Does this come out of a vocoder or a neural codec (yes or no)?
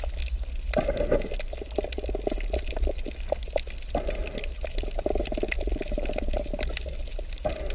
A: no